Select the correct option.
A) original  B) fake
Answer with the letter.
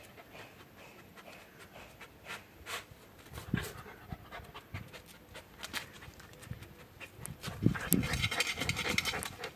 A